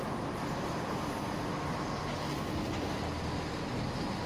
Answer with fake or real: real